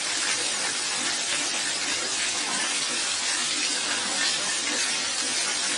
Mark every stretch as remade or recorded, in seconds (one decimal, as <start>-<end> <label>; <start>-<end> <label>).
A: 0.0-1.9 recorded; 1.9-5.2 remade; 5.2-5.8 recorded